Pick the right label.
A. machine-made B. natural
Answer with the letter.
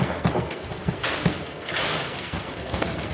A